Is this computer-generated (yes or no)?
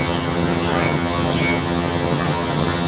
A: yes